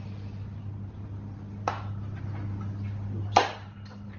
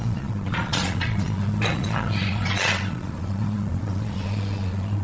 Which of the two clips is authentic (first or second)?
first